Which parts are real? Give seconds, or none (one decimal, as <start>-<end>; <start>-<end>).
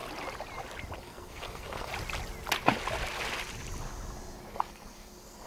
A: 0.0-1.0; 1.9-4.5